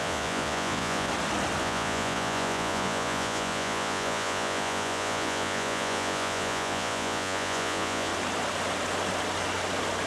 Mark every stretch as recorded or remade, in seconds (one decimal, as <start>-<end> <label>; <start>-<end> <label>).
0.0-1.1 remade; 1.1-1.6 recorded; 1.6-8.1 remade; 8.1-10.1 recorded